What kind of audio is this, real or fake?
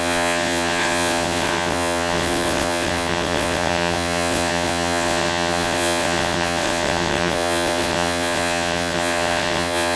fake